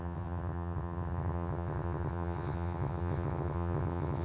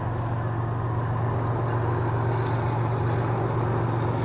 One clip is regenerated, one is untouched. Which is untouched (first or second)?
second